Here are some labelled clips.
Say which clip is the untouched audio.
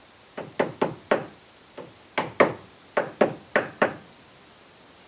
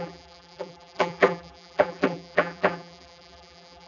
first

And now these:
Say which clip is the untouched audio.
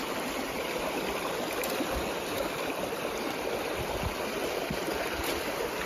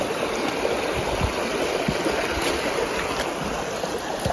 second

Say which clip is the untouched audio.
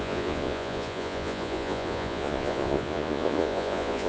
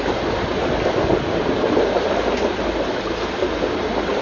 second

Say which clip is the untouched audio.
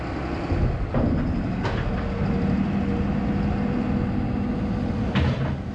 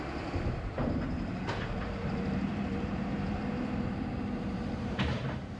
first